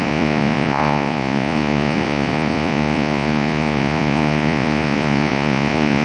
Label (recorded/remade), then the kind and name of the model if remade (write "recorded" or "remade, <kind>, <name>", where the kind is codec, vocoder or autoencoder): remade, vocoder, Vocos